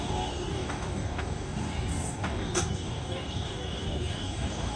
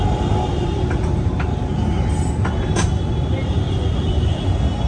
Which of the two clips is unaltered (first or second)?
second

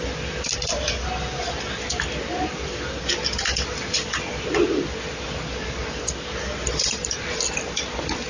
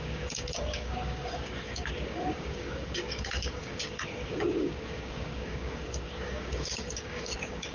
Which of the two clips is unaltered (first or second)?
first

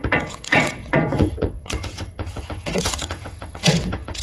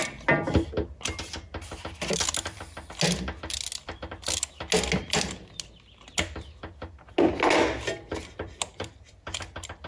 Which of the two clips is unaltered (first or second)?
second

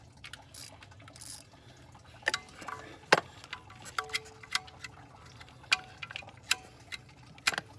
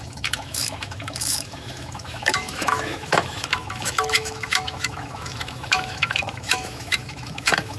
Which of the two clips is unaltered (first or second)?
first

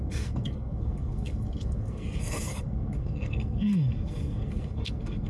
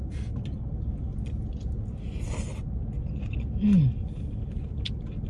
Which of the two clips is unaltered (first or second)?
second